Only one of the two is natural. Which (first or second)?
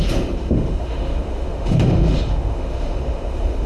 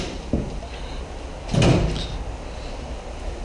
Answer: second